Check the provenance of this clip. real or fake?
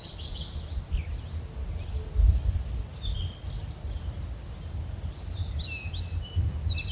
real